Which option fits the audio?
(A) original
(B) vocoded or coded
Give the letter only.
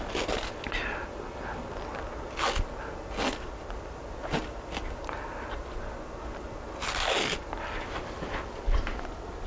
A